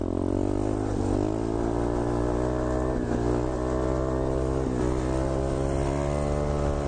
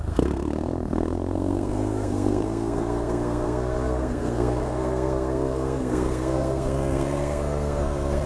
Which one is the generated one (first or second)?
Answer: second